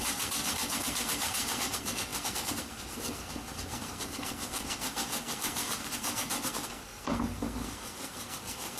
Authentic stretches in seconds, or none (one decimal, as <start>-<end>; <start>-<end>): none